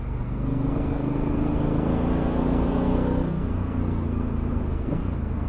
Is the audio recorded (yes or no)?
no